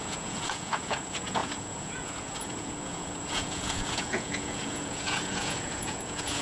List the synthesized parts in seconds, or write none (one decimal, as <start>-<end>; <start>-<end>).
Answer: 0.0-6.4